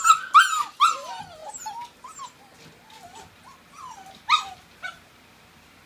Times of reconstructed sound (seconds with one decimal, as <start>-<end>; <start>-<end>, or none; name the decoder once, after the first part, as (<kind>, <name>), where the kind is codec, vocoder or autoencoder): none